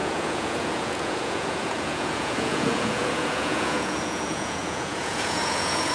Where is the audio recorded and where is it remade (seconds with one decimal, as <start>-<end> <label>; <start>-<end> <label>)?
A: 0.0-5.9 remade